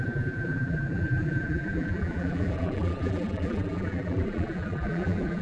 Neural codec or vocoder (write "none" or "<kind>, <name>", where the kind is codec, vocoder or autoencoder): vocoder, BigVGAN v2